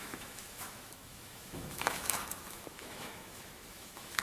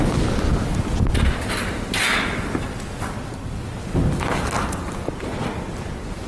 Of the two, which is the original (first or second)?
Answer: second